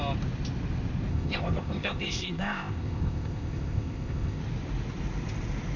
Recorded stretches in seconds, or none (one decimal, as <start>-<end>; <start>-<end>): 0.0-1.1; 4.4-5.8

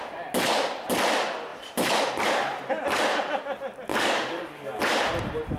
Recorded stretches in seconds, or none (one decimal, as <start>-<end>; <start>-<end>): 0.0-3.9; 4.8-5.6

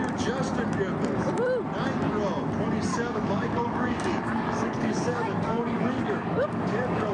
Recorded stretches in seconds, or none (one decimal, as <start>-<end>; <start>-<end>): 0.0-2.9

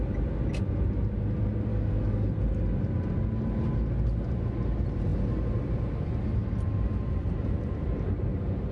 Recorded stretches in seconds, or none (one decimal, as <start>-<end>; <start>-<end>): 0.0-1.7; 2.3-8.7

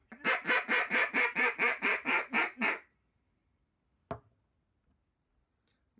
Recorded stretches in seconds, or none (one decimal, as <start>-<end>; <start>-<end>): 3.6-6.0

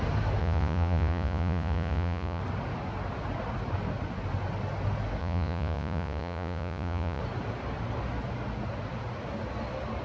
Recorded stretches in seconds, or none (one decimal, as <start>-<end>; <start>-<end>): 0.0-0.4; 2.4-5.2; 7.2-10.0